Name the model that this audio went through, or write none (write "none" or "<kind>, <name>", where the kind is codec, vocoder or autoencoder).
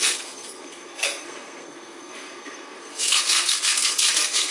codec, SNAC